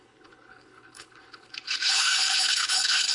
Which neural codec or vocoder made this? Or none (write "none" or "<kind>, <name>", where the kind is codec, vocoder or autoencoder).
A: codec, HILCodec